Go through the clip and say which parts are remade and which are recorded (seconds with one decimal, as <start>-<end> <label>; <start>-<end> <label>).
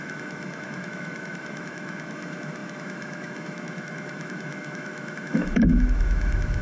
0.0-6.6 remade